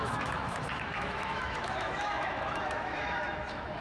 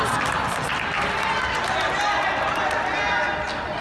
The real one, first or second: second